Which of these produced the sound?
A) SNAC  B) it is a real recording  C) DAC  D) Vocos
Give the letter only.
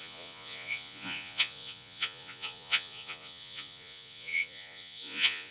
D